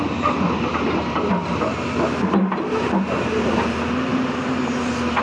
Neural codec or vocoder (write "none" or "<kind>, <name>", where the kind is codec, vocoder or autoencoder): none